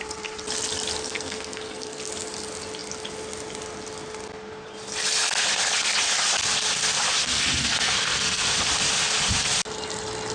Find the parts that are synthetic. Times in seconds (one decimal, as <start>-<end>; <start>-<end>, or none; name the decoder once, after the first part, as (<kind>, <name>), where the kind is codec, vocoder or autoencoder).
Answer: 1.0-2.1 (codec, SNAC); 7.2-8.4